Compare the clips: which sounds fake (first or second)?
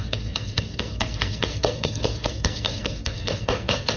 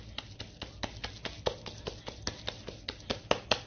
first